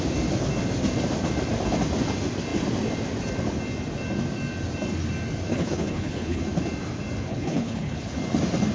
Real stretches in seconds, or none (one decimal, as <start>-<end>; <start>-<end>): 0.0-5.5; 6.4-7.3; 8.1-8.7